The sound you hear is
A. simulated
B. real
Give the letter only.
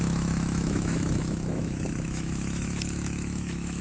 A